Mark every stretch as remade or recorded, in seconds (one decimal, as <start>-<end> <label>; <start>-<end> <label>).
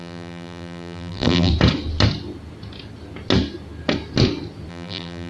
0.0-1.5 remade; 1.5-4.7 recorded; 4.7-5.3 remade